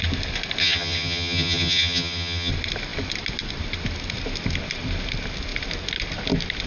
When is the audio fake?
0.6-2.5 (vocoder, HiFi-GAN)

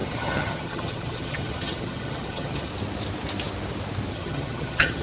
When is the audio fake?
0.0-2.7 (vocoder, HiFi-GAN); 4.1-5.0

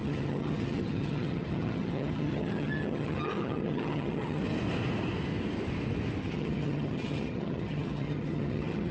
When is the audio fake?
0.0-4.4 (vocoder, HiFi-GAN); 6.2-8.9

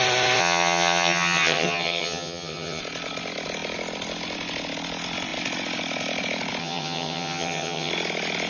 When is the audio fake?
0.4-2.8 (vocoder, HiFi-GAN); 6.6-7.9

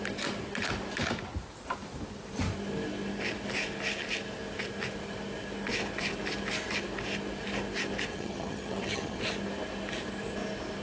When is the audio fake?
8.1-9.2 (vocoder, HiFi-GAN)